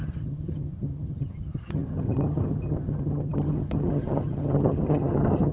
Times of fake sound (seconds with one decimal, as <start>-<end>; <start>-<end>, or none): 0.0-5.5